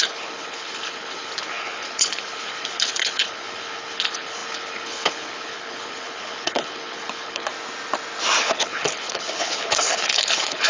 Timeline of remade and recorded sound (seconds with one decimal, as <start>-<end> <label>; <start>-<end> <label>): 0.0-7.5 remade; 7.5-8.4 recorded; 8.4-10.7 remade